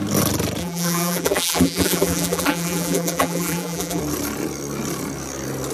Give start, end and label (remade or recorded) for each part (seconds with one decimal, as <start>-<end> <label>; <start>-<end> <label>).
0.0-0.6 recorded; 0.6-4.0 remade; 4.0-5.7 recorded